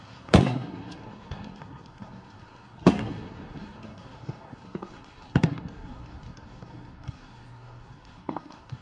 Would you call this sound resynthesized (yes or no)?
yes